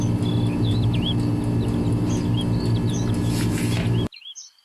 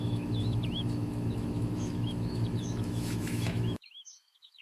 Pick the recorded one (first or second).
first